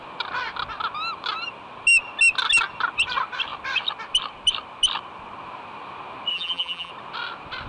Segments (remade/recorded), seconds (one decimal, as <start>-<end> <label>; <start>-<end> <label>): 0.0-6.3 recorded; 6.3-6.9 remade; 6.9-7.7 recorded